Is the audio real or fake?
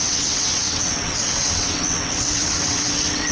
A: fake